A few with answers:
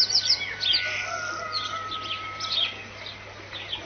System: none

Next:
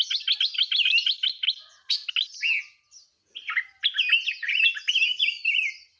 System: none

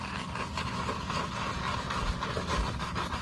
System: none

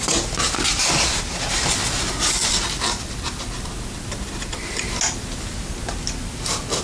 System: none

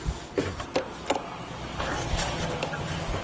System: none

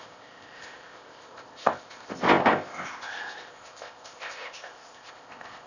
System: codec, ZipCodec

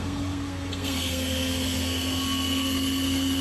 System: codec, SNAC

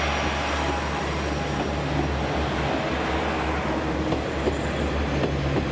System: none